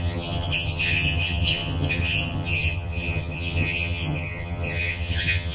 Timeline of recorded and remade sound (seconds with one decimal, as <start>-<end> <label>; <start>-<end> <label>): 0.0-5.5 remade